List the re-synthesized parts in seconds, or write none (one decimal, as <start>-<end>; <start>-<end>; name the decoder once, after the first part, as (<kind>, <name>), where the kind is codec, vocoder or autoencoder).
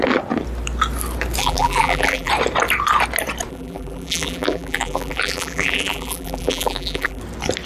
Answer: 1.4-2.3 (vocoder, BigVGAN v2); 3.5-7.2